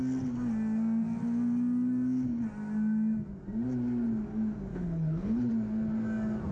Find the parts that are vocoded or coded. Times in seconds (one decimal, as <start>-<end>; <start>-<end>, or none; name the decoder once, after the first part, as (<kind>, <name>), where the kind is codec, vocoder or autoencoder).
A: 4.7-5.5 (codec, HILCodec)